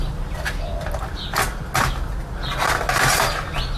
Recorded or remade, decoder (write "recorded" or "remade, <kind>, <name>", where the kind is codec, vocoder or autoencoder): recorded